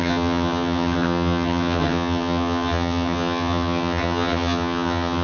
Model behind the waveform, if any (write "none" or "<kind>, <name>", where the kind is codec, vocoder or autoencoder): vocoder, HiFi-GAN